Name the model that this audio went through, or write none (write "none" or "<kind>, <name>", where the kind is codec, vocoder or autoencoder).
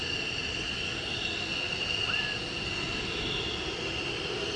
none